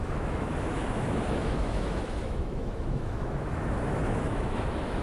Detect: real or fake fake